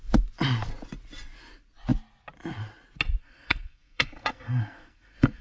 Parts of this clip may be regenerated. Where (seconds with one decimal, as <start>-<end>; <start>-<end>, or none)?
3.2-5.4